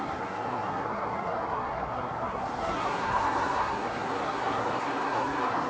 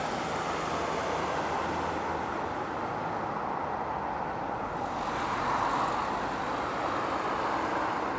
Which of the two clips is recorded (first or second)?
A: second